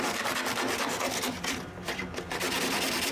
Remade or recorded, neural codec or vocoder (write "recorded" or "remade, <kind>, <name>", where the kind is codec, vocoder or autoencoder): remade, vocoder, BigVGAN v2